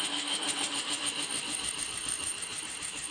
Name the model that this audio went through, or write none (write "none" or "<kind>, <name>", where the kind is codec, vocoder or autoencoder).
autoencoder, DAC-VAE